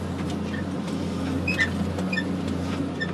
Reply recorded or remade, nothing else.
recorded